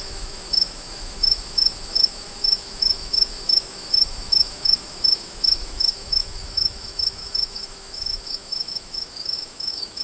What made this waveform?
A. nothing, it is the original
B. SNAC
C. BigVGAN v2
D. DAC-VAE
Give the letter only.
D